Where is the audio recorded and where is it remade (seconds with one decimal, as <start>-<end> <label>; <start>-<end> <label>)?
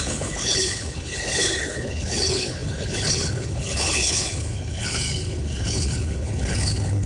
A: 0.0-7.1 remade